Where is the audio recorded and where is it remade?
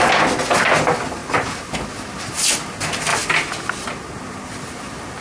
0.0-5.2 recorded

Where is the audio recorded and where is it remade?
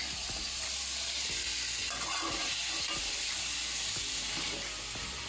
0.0-5.3 recorded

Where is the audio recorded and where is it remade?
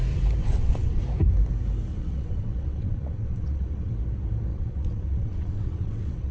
0.0-0.4 recorded; 0.4-1.0 remade; 1.0-1.9 recorded; 1.9-3.9 remade; 3.9-4.5 recorded; 4.5-6.3 remade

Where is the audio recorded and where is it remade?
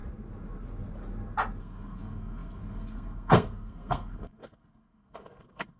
0.0-1.6 recorded; 1.6-5.8 remade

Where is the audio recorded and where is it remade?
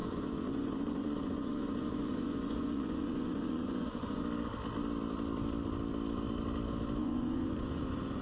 0.0-4.2 remade; 4.2-7.0 recorded; 7.0-8.2 remade